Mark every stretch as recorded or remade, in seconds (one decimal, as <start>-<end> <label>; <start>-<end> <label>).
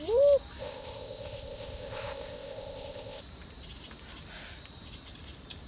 0.0-0.6 recorded; 0.6-3.2 remade; 3.2-5.7 recorded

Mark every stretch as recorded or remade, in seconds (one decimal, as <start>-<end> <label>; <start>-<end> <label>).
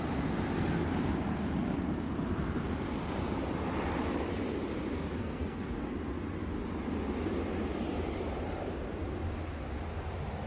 0.0-5.2 recorded; 5.2-5.9 remade; 5.9-10.5 recorded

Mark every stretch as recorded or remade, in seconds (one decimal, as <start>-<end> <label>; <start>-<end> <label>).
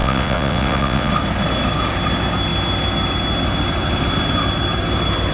0.0-1.1 remade; 1.1-5.3 recorded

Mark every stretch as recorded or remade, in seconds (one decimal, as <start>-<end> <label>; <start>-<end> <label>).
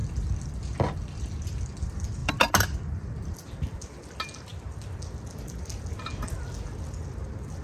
0.0-1.3 remade; 1.3-2.2 recorded; 2.2-3.6 remade; 3.6-7.6 recorded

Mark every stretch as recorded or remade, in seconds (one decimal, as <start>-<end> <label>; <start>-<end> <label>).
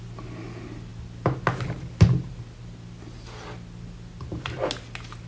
0.0-5.3 recorded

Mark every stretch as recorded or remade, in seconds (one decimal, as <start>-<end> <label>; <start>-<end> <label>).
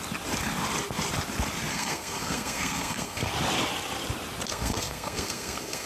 0.0-1.7 recorded; 1.7-3.3 remade; 3.3-4.5 recorded; 4.5-5.9 remade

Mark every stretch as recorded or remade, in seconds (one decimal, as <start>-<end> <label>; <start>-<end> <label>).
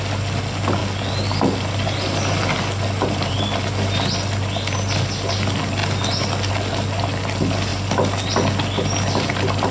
0.0-9.7 recorded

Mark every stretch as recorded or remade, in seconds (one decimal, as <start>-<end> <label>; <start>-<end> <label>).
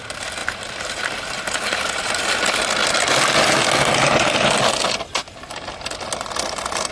0.0-0.4 recorded; 0.4-2.4 remade; 2.4-6.9 recorded